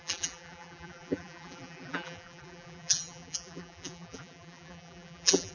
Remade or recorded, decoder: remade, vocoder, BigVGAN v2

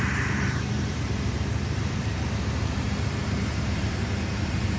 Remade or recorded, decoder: remade, vocoder, BigVGAN v2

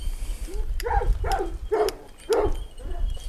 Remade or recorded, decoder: remade, vocoder, BigVGAN v2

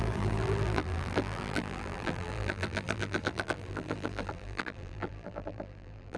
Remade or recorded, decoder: remade, vocoder, BigVGAN v2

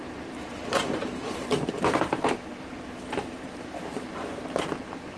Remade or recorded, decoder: remade, vocoder, BigVGAN v2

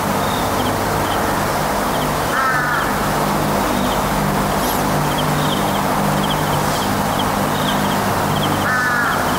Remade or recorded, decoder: recorded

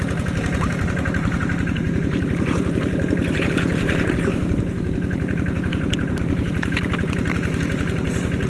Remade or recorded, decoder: remade, vocoder, BigVGAN v2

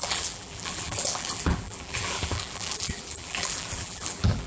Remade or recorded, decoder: remade, vocoder, BigVGAN v2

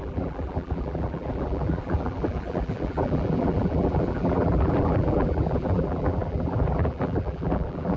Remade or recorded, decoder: remade, vocoder, BigVGAN v2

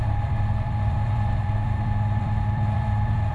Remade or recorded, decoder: remade, vocoder, BigVGAN v2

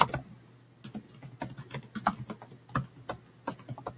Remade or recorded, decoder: recorded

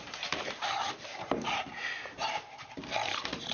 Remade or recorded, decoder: remade, vocoder, BigVGAN v2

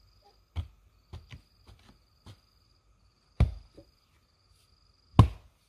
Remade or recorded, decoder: recorded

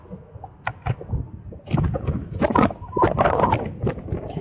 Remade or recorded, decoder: recorded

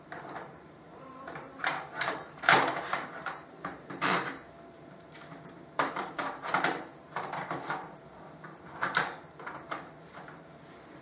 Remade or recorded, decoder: remade, vocoder, BigVGAN v2